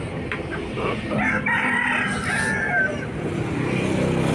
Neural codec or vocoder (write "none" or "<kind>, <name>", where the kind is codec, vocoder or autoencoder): none